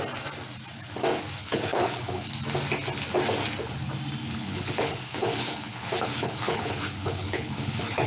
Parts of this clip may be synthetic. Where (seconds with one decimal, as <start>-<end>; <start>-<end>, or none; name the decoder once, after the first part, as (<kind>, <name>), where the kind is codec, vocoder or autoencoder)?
1.4-2.3 (codec, HILCodec); 4.2-8.1